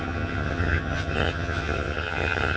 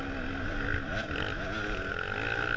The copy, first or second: first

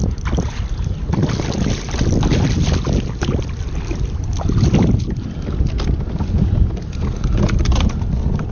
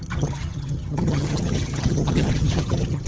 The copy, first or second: second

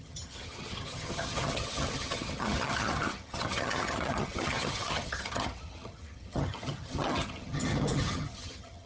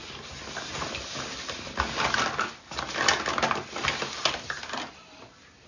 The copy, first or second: first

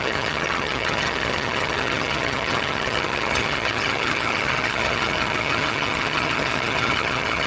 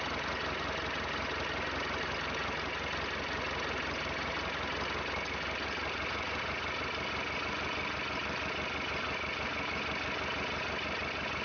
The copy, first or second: first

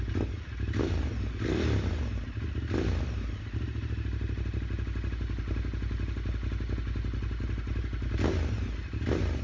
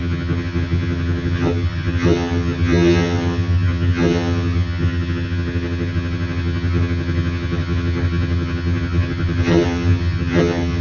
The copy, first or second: second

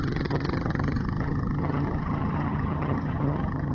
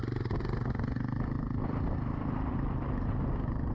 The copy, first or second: first